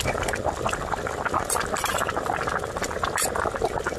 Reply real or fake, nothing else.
real